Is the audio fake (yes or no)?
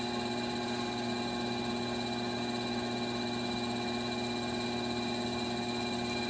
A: no